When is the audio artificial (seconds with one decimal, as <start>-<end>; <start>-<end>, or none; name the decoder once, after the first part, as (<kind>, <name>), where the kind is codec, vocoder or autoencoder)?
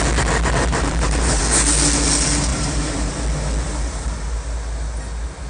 0.7-1.4 (vocoder, BigVGAN v2); 2.5-3.1